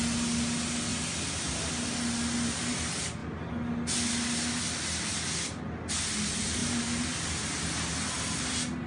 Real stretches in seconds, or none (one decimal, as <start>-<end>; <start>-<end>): 0.0-8.9